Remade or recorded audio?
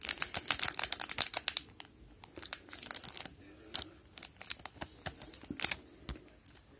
recorded